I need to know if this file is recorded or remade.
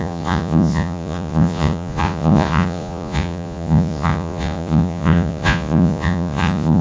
remade